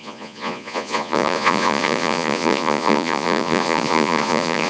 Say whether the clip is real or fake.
fake